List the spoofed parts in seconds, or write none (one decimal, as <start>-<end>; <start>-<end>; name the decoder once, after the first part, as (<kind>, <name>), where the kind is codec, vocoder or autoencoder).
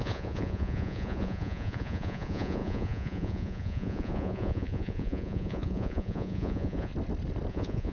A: 0.0-6.9 (vocoder, Vocos); 7.5-7.9